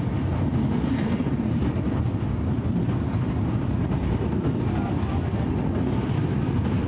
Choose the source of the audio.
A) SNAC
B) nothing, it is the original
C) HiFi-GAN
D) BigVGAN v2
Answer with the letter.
B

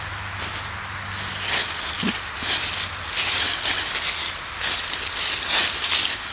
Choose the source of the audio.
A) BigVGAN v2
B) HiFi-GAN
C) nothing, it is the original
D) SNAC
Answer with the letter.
C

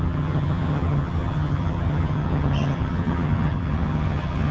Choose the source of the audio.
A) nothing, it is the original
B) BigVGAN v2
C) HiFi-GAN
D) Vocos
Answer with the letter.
C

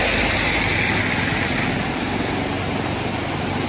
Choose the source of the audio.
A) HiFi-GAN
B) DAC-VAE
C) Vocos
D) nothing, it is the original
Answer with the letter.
D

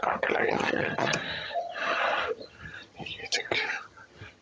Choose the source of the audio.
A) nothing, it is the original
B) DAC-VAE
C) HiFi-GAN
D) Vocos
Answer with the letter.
C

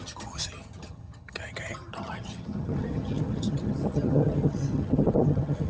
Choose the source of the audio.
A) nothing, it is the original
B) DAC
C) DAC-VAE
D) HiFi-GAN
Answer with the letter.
D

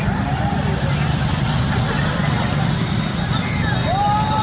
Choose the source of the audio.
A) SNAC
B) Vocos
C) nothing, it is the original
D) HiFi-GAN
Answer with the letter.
C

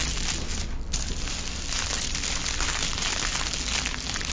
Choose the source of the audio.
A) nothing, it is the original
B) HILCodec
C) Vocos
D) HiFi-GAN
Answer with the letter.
A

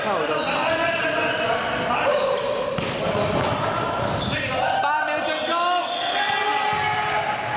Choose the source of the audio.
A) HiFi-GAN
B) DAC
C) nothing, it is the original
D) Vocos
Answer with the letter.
C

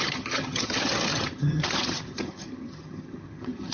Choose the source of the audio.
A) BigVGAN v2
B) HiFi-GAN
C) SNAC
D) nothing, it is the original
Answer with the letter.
B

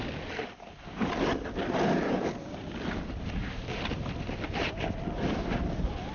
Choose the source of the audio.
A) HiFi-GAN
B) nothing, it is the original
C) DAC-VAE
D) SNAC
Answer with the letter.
B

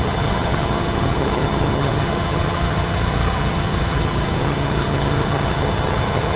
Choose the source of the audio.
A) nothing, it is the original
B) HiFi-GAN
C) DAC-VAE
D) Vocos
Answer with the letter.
B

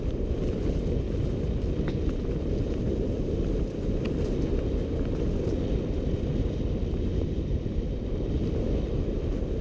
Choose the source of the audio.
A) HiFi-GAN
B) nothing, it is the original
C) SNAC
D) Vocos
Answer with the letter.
B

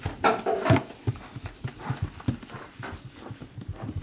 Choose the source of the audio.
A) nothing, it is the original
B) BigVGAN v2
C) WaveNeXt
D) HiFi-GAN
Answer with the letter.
A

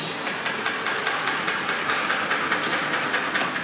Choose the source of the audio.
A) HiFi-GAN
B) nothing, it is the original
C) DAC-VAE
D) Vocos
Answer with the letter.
B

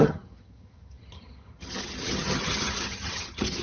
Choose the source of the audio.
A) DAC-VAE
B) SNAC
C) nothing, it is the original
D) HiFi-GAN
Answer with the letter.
D